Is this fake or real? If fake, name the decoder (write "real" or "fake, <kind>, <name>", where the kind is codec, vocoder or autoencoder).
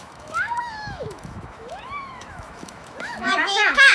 fake, autoencoder, DAC-VAE